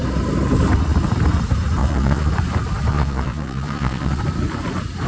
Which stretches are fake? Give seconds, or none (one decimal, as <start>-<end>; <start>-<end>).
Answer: 1.8-2.3; 2.9-4.2